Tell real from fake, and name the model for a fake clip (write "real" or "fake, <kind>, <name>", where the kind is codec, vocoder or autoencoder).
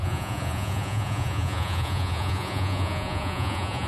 fake, vocoder, Vocos